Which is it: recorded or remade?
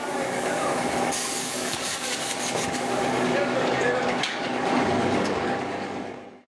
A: remade